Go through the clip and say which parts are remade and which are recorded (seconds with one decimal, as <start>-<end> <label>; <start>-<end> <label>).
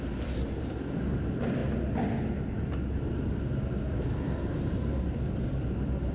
0.0-6.1 recorded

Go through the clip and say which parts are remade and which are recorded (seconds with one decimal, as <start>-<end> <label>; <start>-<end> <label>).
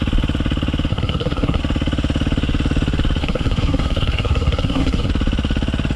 0.0-0.9 recorded; 0.9-1.6 remade; 1.6-3.2 recorded; 3.2-5.1 remade; 5.1-6.0 recorded